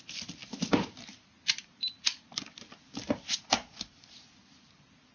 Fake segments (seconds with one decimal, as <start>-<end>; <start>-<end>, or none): none